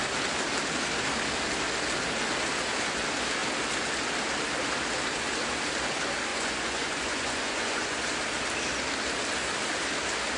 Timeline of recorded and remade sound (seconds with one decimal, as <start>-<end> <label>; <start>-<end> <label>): 0.0-6.3 recorded; 6.3-8.0 remade; 8.0-10.4 recorded

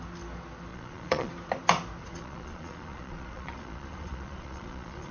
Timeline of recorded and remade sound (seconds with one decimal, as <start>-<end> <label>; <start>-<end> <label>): 0.0-0.7 recorded; 0.7-1.3 remade; 1.3-2.0 recorded; 2.0-5.1 remade

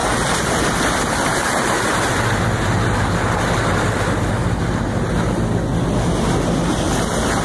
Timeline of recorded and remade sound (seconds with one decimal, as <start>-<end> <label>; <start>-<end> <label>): 0.0-7.4 recorded

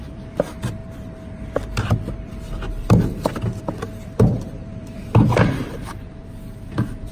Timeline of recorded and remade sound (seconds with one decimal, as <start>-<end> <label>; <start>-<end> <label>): 0.0-7.1 remade

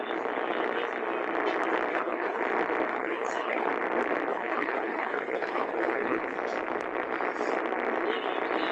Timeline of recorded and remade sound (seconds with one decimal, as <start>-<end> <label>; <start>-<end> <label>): 0.0-1.9 recorded; 1.9-2.4 remade; 2.4-2.9 recorded; 2.9-3.7 remade; 3.7-4.3 recorded; 4.3-6.2 remade; 6.2-8.7 recorded

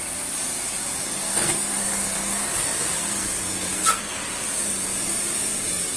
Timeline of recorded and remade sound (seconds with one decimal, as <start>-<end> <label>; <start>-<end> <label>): 0.0-1.1 recorded; 1.1-4.2 remade; 4.2-6.0 recorded